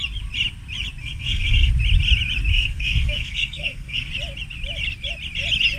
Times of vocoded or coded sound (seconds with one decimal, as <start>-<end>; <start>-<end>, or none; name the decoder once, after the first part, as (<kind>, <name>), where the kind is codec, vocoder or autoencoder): 1.0-1.7 (codec, SNAC); 2.5-4.1